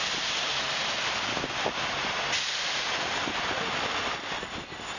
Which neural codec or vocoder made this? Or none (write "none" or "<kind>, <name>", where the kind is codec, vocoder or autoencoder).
none